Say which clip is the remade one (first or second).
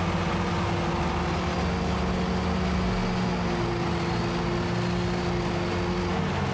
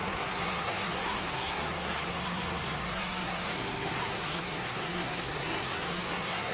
second